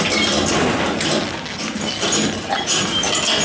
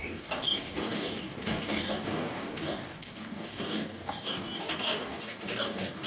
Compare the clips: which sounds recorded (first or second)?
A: first